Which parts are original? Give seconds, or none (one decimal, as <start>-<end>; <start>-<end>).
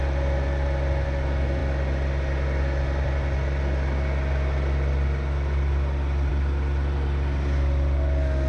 0.0-8.5